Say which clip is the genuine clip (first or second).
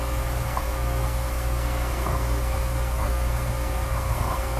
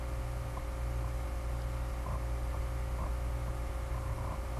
second